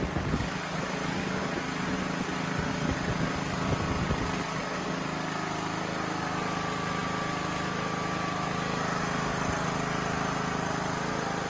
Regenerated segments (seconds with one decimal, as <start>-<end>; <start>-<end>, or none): none